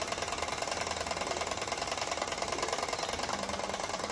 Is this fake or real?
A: real